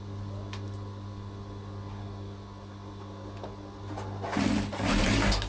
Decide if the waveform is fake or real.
real